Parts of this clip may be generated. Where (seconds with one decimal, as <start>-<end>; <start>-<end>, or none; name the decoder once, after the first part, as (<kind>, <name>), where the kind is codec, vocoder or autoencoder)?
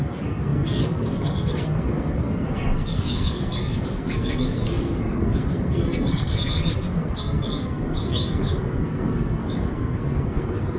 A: 0.0-10.8 (codec, SNAC)